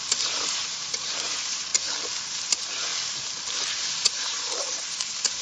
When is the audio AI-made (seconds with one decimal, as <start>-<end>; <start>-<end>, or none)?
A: 0.0-1.7; 2.3-2.9; 3.6-5.4